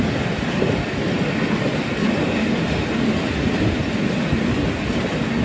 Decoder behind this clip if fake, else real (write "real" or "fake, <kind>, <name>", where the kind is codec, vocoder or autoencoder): real